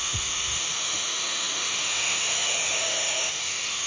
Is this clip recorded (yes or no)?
no